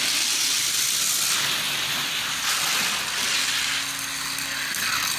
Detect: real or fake real